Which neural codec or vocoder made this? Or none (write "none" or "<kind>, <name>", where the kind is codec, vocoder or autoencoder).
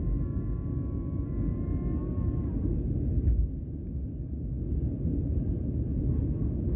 none